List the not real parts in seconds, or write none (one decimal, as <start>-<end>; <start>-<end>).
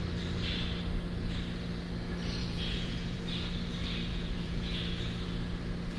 2.4-3.2; 4.1-4.8